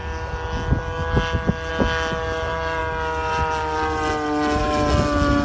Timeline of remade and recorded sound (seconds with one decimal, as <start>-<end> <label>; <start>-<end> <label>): 0.0-5.4 recorded